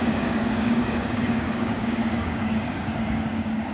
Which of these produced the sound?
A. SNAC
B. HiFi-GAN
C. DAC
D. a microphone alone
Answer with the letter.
C